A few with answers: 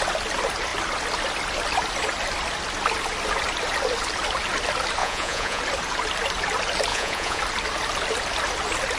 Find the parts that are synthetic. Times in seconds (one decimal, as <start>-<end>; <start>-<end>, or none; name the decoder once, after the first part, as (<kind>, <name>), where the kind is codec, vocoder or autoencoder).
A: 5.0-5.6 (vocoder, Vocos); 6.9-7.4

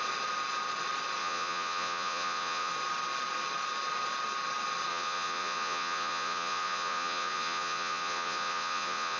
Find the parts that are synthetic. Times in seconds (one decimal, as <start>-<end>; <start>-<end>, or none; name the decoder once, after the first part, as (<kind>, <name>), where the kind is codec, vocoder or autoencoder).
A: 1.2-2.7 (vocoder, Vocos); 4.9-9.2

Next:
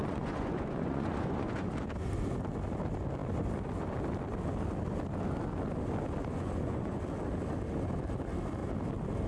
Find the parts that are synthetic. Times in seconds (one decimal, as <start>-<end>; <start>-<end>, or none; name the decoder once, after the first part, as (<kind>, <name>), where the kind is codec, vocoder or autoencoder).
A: 0.0-1.7 (vocoder, Vocos); 6.3-7.0

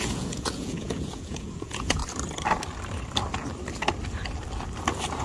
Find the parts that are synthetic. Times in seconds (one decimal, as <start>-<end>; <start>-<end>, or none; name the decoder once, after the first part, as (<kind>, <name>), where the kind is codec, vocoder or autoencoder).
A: 0.0-2.0 (vocoder, Vocos)